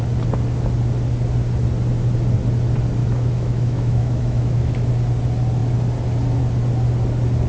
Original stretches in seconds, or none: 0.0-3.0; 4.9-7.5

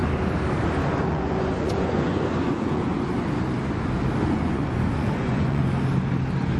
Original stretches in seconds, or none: 0.0-1.1; 2.9-4.2; 5.6-6.6